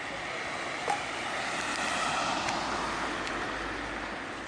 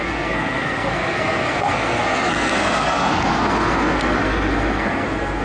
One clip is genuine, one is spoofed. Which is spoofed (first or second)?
second